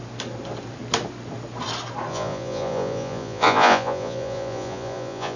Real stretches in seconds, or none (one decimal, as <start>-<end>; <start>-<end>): 0.0-2.1